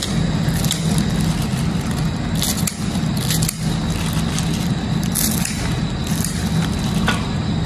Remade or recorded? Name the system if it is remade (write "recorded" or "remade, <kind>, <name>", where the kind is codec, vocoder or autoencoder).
recorded